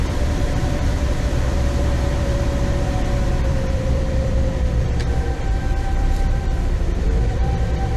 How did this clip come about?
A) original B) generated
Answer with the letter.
B